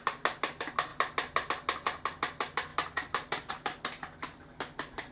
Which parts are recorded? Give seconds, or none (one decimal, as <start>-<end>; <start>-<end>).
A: 0.0-2.7; 3.5-5.1